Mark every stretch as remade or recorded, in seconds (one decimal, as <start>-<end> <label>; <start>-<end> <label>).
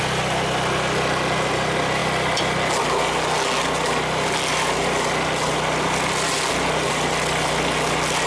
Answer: 0.0-8.3 recorded